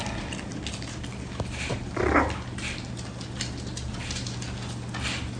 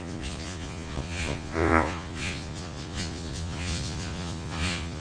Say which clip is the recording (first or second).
first